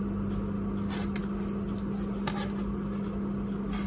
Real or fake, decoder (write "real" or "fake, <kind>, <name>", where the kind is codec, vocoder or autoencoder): real